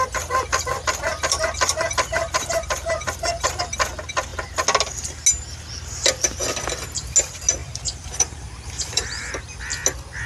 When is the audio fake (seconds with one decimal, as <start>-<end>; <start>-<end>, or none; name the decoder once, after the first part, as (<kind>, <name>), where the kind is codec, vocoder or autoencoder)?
1.1-3.5 (vocoder, BigVGAN v2); 7.6-9.6